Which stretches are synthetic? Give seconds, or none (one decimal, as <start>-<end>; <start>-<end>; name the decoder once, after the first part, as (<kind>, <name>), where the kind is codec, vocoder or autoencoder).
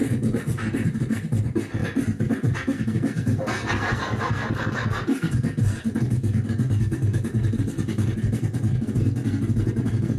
0.0-10.2 (codec, SNAC)